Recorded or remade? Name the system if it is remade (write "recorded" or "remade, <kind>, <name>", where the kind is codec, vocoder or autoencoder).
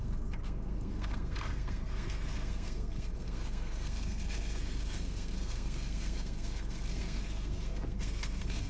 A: remade, codec, SNAC